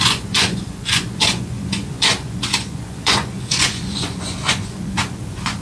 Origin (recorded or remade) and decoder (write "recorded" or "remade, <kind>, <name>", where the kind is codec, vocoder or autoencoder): remade, vocoder, Vocos